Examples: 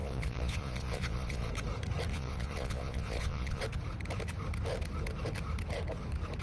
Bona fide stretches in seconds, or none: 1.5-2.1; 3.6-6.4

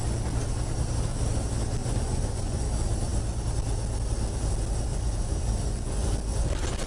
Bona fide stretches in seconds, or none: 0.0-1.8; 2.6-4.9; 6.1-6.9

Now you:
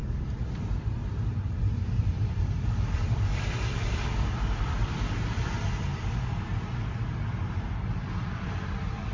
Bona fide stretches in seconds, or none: 5.9-7.4